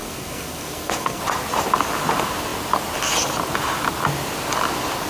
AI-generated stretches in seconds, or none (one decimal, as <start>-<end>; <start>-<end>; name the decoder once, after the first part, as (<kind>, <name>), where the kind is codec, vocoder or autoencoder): 0.0-1.2 (codec, SNAC)